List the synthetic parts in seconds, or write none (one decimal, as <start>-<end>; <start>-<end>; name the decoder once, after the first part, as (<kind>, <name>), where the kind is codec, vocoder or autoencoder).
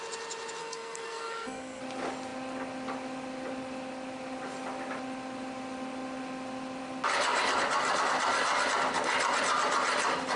0.6-1.8 (codec, SNAC)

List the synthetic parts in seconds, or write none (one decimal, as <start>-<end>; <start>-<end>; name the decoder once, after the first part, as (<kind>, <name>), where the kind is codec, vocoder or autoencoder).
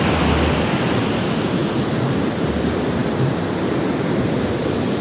3.0-3.7 (vocoder, BigVGAN v2)